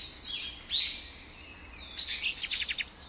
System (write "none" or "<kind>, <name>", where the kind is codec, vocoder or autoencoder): none